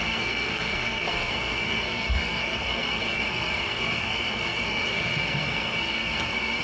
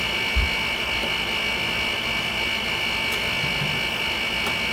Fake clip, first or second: first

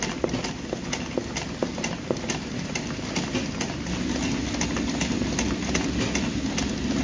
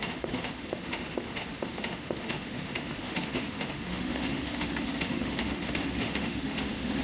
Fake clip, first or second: second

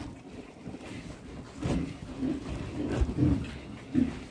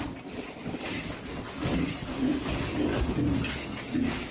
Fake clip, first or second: first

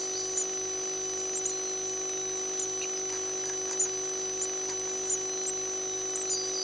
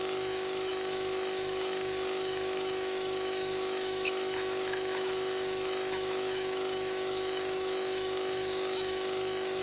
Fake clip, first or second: second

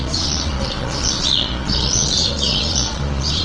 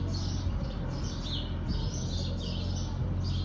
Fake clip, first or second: first